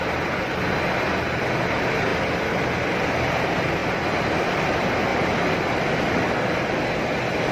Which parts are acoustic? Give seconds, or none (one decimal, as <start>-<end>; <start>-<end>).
0.0-3.8; 4.6-5.1; 6.2-7.5